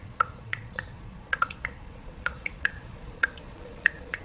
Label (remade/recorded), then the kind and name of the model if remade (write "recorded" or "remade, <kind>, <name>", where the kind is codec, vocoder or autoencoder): remade, vocoder, Vocos